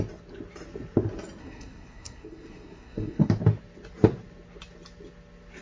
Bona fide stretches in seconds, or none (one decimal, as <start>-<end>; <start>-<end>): 0.0-1.4; 3.3-5.6